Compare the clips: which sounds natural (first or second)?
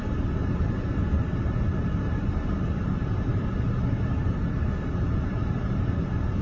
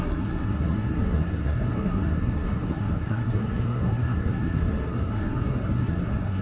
first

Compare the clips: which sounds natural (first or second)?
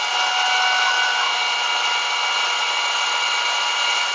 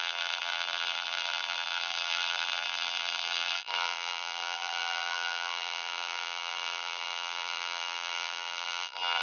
first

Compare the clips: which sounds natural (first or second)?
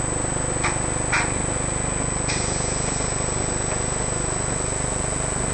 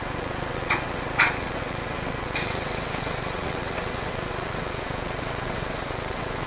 first